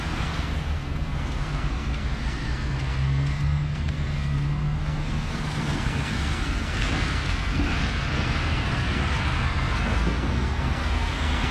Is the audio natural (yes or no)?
no